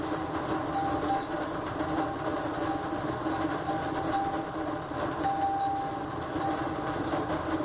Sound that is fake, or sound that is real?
real